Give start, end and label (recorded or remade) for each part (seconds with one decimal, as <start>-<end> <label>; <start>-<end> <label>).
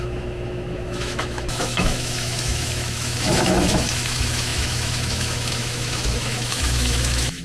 0.0-7.4 remade